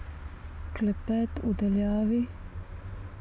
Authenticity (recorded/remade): recorded